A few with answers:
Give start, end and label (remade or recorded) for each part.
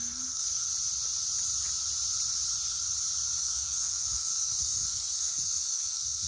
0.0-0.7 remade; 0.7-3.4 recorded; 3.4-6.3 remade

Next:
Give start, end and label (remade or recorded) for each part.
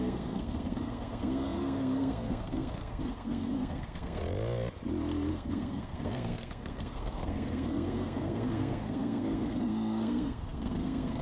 0.0-4.2 remade; 4.2-5.3 recorded; 5.3-11.2 remade